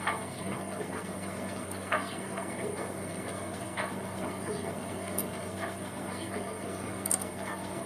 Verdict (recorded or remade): remade